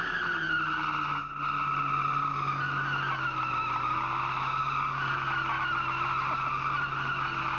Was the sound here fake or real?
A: real